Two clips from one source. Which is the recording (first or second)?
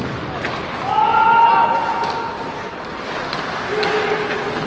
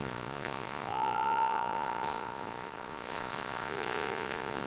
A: first